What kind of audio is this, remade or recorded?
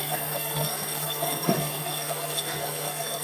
remade